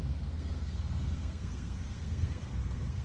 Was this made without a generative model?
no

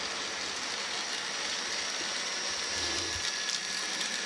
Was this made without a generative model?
yes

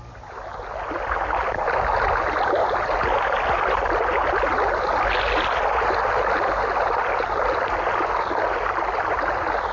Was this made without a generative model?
yes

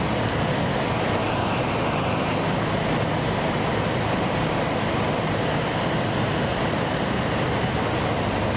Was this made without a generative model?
yes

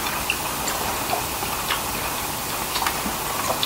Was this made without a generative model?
yes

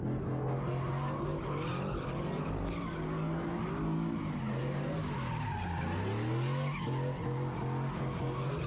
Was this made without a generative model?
yes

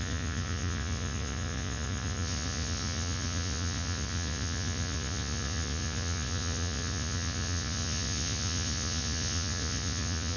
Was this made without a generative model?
no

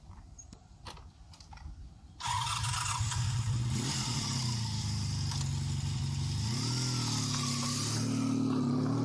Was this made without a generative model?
yes